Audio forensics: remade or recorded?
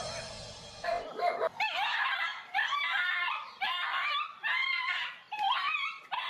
remade